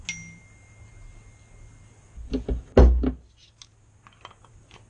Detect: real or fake real